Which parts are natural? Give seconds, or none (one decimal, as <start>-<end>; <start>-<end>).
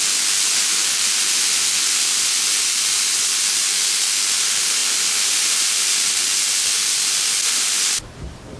0.0-8.6